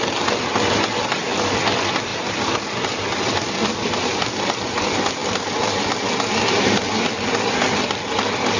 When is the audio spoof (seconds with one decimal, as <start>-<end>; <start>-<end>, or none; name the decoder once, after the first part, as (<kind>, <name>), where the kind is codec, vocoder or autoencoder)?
none